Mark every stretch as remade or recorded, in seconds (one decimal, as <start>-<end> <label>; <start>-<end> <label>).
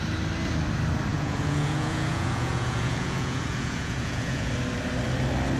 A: 0.0-1.1 recorded; 1.1-4.5 remade; 4.5-5.6 recorded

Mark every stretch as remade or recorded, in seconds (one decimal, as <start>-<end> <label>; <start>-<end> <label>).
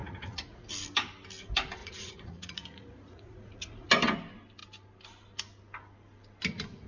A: 0.0-0.7 remade; 0.7-1.8 recorded; 1.8-3.9 remade; 3.9-6.9 recorded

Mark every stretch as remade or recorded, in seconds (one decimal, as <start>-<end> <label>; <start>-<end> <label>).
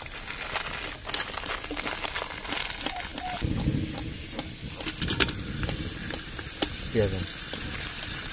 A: 0.0-8.3 recorded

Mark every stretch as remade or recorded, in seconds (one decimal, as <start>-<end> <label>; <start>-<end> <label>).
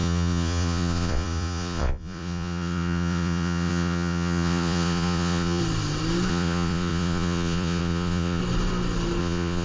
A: 0.0-5.6 remade; 5.6-6.3 recorded; 6.3-8.4 remade; 8.4-9.2 recorded; 9.2-9.6 remade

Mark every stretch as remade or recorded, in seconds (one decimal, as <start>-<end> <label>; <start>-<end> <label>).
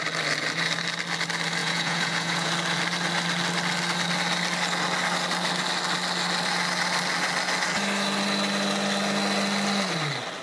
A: 0.0-1.6 recorded; 1.6-2.5 remade; 2.5-10.4 recorded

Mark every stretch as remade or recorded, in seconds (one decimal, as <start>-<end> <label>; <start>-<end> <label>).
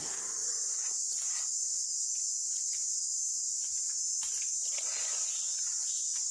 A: 0.0-6.3 recorded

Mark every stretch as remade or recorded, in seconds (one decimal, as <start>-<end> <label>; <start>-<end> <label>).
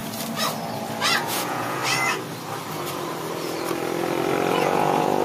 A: 0.0-1.2 recorded; 1.2-1.8 remade; 1.8-4.5 recorded; 4.5-5.2 remade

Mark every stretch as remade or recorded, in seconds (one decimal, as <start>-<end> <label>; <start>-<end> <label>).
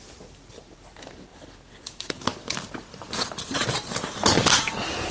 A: 0.0-5.1 recorded